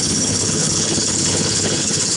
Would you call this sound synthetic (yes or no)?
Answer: yes